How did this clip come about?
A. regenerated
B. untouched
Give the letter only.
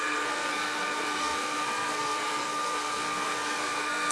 A